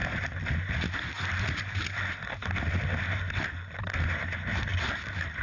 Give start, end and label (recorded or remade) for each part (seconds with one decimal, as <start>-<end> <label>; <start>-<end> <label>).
0.0-5.4 recorded